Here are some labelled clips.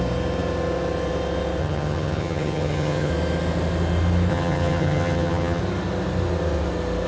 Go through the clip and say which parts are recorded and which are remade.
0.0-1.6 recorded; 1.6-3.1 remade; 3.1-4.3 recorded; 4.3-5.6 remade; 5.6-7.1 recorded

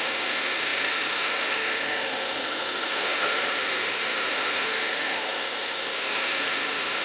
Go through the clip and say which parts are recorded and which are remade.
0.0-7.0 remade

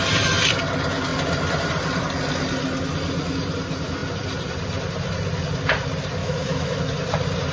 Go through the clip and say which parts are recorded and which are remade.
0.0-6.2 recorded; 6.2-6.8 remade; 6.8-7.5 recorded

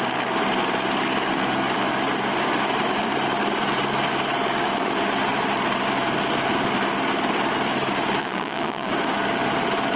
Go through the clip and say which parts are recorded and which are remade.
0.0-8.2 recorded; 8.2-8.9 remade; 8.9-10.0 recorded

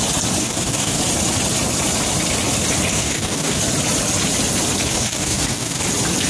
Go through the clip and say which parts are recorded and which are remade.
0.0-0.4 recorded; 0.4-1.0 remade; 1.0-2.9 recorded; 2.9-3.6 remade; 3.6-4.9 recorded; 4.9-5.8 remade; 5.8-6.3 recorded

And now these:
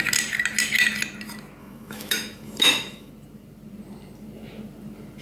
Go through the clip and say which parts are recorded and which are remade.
0.0-1.6 recorded; 1.6-3.1 remade; 3.1-5.2 recorded

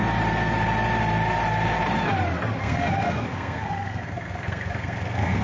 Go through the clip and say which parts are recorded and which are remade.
0.0-2.6 recorded; 2.6-5.4 remade